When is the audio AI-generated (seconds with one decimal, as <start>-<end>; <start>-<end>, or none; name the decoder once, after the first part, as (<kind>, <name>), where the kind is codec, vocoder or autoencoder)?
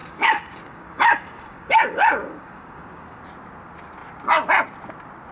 0.0-3.2 (codec, DAC)